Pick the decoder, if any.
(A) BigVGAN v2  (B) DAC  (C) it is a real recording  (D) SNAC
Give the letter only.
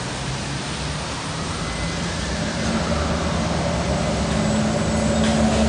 C